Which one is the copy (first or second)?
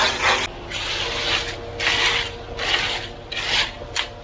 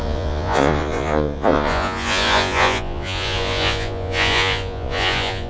second